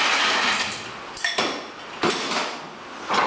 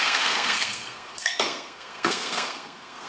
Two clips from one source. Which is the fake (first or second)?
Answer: second